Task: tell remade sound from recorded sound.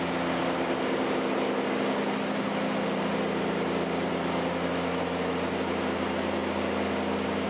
recorded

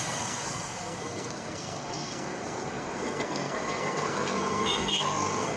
remade